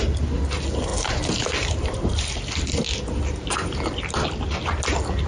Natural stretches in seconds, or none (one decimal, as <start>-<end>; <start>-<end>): 0.0-0.9; 2.2-5.3